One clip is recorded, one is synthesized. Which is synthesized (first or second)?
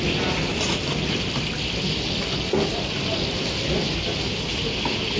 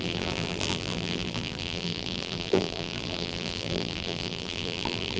second